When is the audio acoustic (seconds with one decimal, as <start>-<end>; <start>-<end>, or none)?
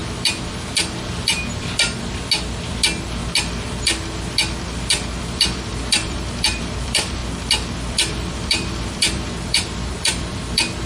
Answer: 0.0-5.2; 7.2-7.8